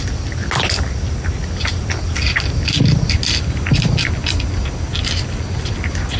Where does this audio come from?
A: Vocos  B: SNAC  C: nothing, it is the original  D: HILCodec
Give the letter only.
C